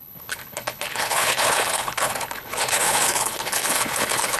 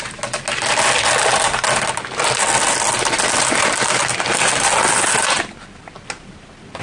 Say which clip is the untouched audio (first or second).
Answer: second